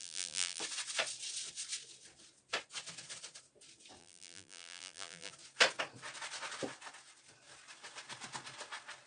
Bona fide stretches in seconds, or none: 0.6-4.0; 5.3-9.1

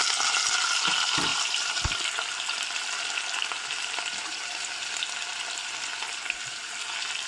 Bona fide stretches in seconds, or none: 0.0-1.3; 2.4-5.3; 6.7-7.3

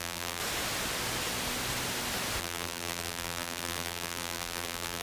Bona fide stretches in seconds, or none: 0.4-2.4

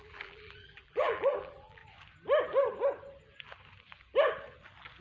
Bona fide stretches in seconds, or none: 1.8-5.0

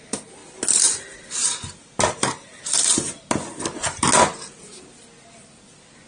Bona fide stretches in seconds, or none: 0.0-6.1

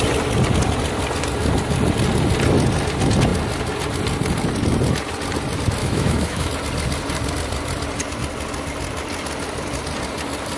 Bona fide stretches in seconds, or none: 0.0-5.8; 6.5-10.6